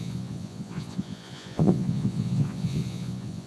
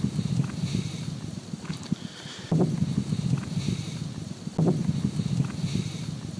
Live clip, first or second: second